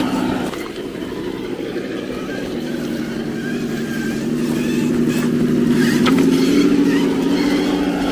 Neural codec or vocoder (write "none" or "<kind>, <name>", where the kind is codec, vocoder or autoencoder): none